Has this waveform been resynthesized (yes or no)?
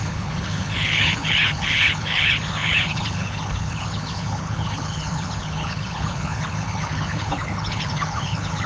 yes